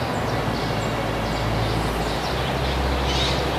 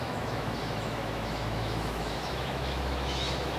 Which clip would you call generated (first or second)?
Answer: second